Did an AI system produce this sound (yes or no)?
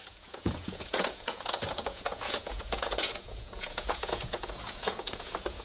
yes